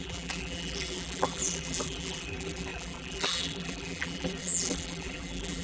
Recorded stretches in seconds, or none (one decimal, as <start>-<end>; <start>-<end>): none